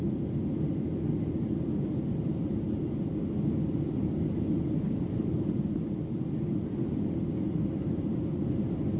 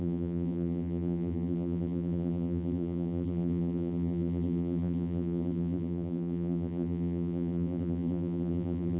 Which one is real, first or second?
first